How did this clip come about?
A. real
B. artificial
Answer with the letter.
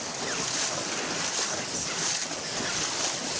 A